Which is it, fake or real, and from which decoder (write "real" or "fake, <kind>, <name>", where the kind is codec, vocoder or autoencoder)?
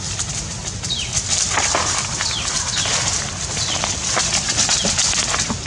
real